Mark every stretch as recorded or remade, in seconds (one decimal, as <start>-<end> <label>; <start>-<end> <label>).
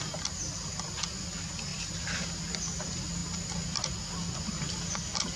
0.0-1.7 recorded; 1.7-2.3 remade; 2.3-5.4 recorded